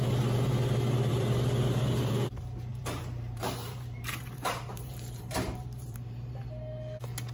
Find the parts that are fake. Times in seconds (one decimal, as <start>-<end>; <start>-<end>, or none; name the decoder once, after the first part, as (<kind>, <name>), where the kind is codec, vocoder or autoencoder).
1.1-2.1 (vocoder, BigVGAN v2); 2.7-6.4